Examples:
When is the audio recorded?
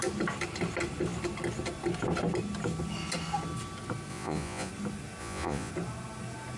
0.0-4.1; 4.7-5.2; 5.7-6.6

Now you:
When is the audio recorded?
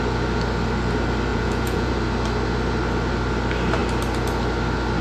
0.0-1.3; 1.9-5.0